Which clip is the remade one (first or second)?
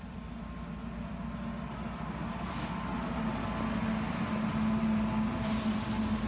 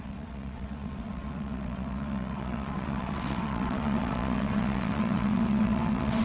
second